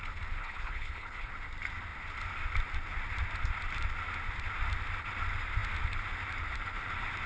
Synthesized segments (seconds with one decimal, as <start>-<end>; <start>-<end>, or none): 0.4-1.3